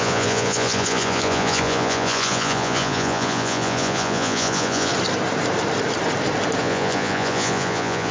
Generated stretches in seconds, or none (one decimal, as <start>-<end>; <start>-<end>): 0.0-4.9; 6.6-8.1